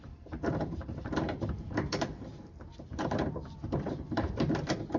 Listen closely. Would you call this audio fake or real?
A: fake